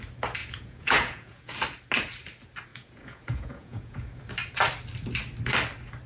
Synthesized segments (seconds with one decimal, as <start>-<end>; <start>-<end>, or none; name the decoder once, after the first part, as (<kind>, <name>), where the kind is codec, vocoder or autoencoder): 0.4-1.5 (vocoder, Vocos); 2.7-4.2